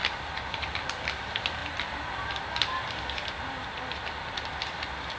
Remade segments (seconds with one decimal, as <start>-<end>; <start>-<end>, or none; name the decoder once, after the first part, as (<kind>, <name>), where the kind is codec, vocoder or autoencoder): 0.0-1.2 (vocoder, BigVGAN v2); 1.6-4.7